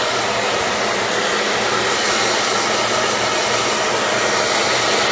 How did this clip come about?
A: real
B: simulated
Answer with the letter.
A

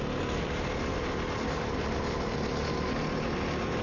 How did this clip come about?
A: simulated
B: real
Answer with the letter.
B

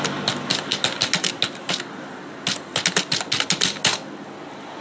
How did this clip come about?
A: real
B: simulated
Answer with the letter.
A